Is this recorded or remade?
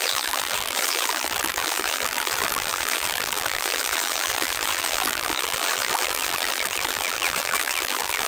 remade